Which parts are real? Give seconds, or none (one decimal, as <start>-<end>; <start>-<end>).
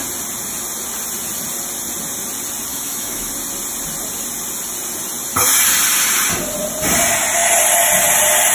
0.0-2.7; 3.3-8.5